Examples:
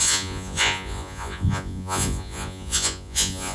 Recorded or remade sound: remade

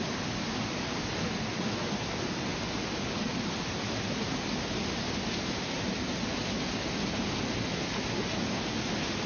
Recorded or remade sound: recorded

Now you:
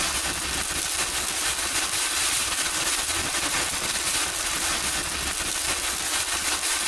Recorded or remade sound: recorded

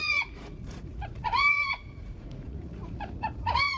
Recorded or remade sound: remade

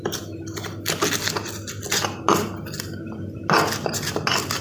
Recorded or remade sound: recorded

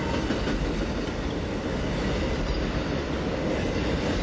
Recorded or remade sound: recorded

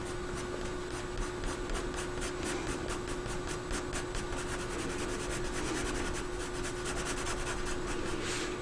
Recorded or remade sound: recorded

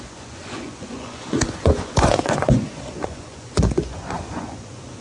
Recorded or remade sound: remade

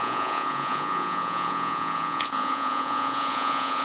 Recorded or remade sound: remade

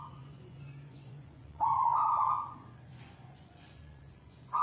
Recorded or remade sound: remade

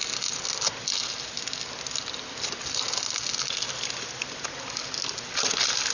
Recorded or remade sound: recorded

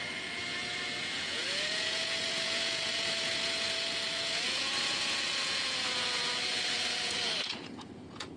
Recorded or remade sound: remade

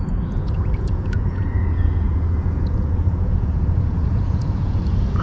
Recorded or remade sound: remade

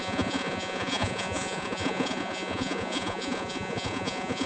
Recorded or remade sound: remade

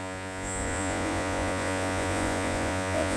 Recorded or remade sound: remade